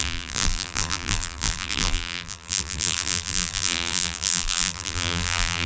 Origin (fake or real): fake